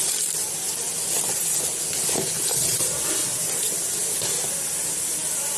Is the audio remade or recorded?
recorded